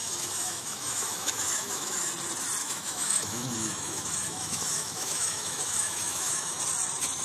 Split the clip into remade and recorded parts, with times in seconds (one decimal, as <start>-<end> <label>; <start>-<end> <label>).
0.0-2.1 remade; 2.1-2.6 recorded; 2.6-6.6 remade; 6.6-7.2 recorded